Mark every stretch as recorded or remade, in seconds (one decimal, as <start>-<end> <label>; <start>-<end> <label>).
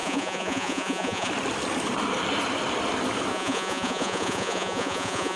0.0-1.3 remade; 1.3-3.3 recorded; 3.3-5.4 remade